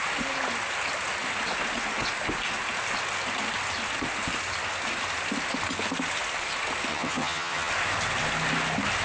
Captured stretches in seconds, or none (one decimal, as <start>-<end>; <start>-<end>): 0.0-6.9; 7.7-9.0